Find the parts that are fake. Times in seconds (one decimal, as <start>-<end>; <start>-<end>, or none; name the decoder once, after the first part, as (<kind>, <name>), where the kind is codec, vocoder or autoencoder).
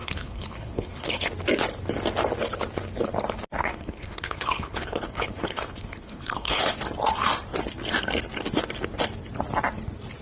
0.0-1.3 (codec, HILCodec); 3.6-6.6